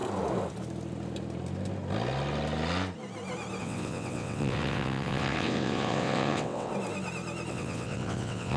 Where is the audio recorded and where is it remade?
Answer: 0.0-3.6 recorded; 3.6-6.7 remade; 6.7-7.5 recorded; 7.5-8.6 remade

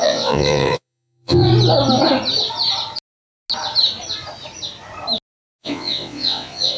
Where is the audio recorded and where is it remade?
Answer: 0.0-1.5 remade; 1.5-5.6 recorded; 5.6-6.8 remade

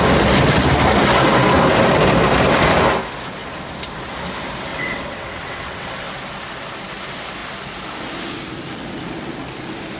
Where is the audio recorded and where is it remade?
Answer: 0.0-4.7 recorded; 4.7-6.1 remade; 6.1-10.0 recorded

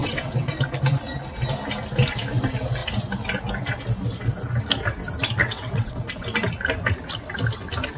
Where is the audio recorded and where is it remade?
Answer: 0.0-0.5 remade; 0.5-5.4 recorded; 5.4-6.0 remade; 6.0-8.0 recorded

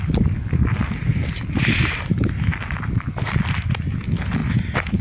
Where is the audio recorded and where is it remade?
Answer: 0.0-5.0 recorded